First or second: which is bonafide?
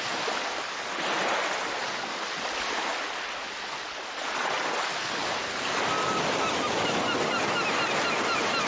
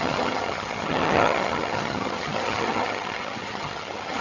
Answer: first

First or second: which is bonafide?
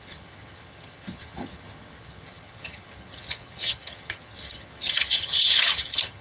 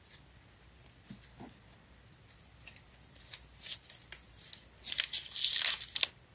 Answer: second